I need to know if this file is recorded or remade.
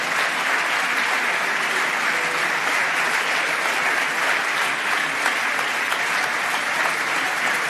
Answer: recorded